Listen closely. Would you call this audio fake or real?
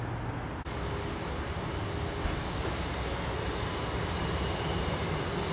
real